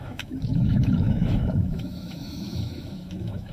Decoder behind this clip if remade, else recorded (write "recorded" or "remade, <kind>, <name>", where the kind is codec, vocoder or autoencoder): remade, autoencoder, DAC-VAE